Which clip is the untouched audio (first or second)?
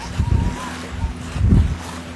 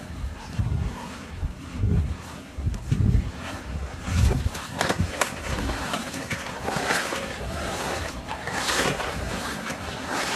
first